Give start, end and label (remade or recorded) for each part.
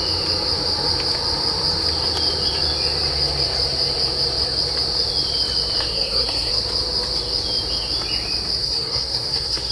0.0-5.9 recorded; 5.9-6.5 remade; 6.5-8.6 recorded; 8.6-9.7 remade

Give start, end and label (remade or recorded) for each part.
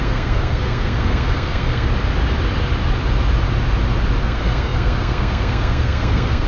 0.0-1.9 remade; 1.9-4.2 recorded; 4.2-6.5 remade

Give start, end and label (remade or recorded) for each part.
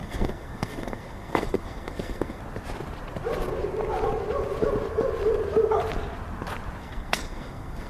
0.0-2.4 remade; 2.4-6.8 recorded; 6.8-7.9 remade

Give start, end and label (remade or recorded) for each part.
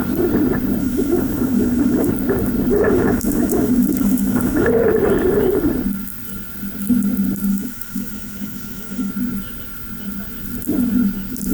0.0-0.8 recorded; 0.8-2.1 remade; 2.1-2.7 recorded; 2.7-4.7 remade; 4.7-7.5 recorded; 7.5-9.1 remade; 9.1-11.5 recorded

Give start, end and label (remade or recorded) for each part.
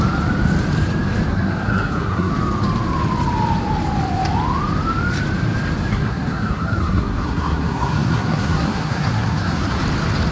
0.0-1.3 recorded; 1.3-2.3 remade; 2.3-5.9 recorded; 5.9-9.8 remade; 9.8-10.3 recorded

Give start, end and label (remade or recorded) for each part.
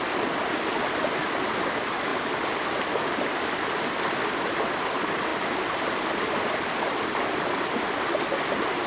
0.0-8.9 recorded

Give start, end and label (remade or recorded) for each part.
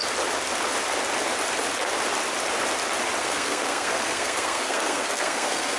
0.0-3.2 recorded; 3.2-5.8 remade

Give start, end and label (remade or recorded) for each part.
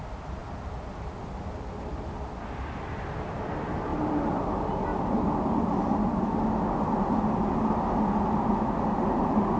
0.0-3.9 recorded; 3.9-4.5 remade; 4.5-9.6 recorded